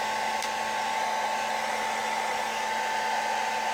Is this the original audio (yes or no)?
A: yes